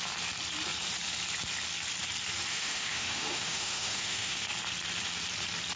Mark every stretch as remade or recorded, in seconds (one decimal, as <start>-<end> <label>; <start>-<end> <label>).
0.0-2.5 recorded; 2.5-4.4 remade; 4.4-5.8 recorded

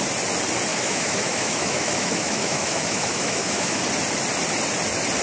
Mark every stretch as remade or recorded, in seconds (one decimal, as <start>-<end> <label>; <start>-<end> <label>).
0.0-0.7 recorded; 0.7-3.8 remade; 3.8-5.2 recorded

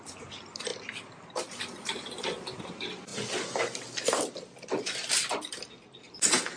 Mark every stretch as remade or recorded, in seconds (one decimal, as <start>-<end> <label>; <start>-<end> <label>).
0.0-6.6 recorded

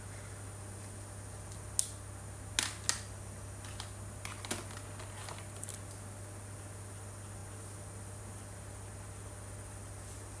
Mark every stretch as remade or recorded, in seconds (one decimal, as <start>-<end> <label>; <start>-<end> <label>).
0.0-10.4 recorded

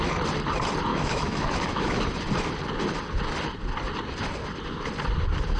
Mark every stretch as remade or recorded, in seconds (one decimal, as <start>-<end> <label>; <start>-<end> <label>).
0.0-0.9 recorded; 0.9-2.0 remade; 2.0-5.6 recorded

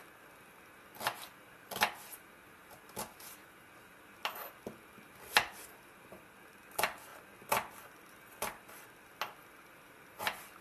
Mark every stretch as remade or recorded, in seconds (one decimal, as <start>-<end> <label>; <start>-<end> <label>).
0.0-10.6 recorded